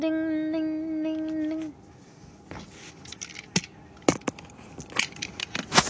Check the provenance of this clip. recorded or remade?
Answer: recorded